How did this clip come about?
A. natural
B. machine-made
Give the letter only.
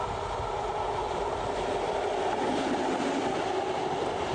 A